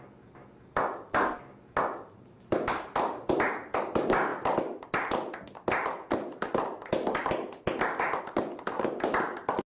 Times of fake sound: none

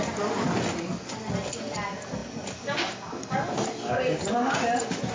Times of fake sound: none

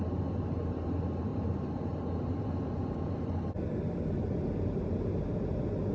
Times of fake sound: none

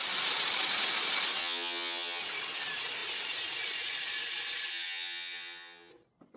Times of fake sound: 1.4-2.2 (vocoder, HiFi-GAN); 4.7-5.9